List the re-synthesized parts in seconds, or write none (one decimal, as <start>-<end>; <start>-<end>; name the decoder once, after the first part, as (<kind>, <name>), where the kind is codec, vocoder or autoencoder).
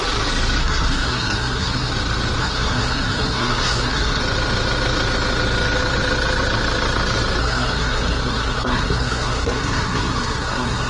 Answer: 0.6-1.9 (codec, SNAC); 2.4-4.2; 7.4-10.9